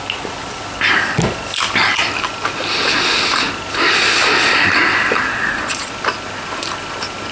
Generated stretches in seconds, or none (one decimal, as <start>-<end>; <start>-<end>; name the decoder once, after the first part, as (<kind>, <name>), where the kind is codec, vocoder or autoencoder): 5.3-5.9 (vocoder, Vocos)